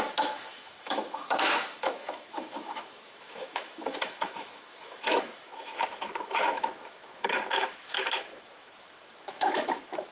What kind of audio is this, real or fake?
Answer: fake